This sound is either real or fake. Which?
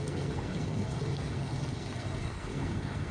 fake